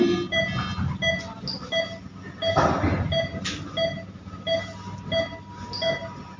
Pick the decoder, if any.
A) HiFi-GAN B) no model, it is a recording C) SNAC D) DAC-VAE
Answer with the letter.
B